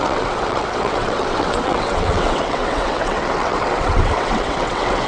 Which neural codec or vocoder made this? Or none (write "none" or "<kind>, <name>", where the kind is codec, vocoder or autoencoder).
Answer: vocoder, WaveNeXt